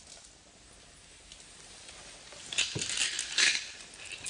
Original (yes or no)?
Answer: yes